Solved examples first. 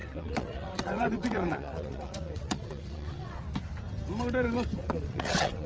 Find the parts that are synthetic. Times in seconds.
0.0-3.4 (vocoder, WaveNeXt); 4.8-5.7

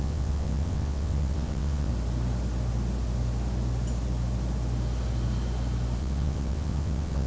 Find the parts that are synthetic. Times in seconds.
0.0-1.9 (vocoder, WaveNeXt); 6.0-7.3

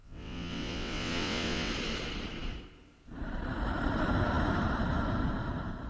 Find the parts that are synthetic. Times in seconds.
0.0-1.7 (vocoder, WaveNeXt)

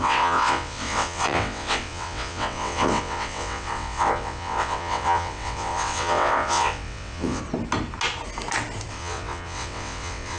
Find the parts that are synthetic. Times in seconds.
0.0-7.4 (vocoder, WaveNeXt); 8.9-10.4

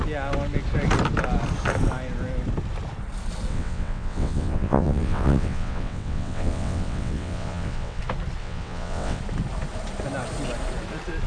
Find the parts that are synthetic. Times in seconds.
3.5-8.0 (vocoder, WaveNeXt); 8.4-9.2

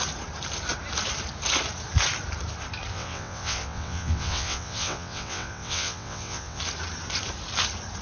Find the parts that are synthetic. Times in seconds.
2.9-6.6 (vocoder, WaveNeXt)